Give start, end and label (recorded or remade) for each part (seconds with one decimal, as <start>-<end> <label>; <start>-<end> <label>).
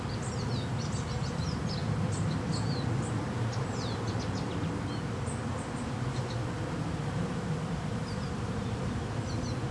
0.0-9.7 recorded